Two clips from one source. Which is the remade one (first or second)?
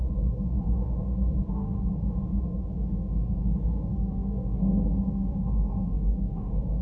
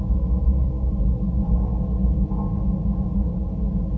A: first